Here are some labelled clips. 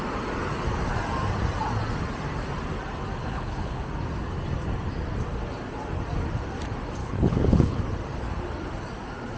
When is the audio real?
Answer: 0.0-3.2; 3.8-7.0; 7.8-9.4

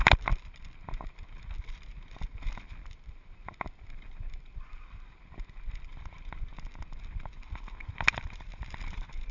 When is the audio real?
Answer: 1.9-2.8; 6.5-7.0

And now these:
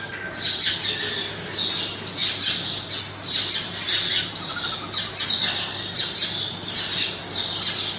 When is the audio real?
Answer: 0.0-8.0

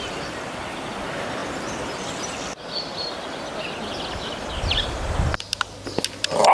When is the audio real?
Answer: 0.0-6.5